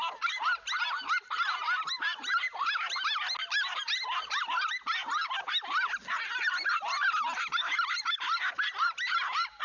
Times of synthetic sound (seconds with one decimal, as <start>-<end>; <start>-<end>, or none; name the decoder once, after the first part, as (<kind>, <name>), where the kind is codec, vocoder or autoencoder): none